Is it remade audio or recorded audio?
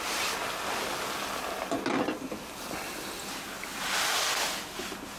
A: recorded